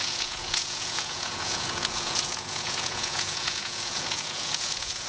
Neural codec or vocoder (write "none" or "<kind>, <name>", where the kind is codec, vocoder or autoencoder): vocoder, Vocos